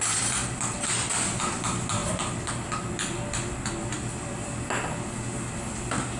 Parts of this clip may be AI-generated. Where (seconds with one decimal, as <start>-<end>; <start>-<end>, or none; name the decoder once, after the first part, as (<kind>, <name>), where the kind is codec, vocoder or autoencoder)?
none